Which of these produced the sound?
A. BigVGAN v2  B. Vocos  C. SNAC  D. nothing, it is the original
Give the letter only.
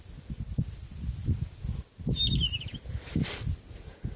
D